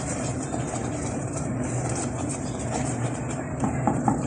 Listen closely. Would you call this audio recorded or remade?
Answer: remade